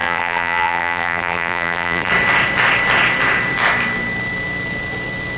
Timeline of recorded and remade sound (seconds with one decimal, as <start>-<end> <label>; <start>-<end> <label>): 0.0-2.1 remade; 2.1-5.4 recorded